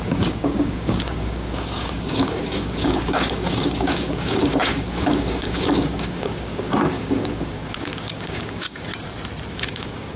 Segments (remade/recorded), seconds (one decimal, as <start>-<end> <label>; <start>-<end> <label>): 0.0-8.9 remade; 8.9-9.5 recorded; 9.5-10.2 remade